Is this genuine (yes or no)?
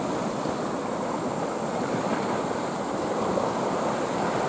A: yes